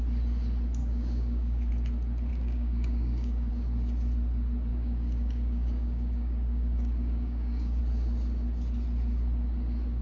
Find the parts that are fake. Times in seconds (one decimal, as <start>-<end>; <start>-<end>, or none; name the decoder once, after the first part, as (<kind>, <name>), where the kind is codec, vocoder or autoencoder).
0.8-1.7 (codec, DAC); 2.3-3.5; 4.7-7.8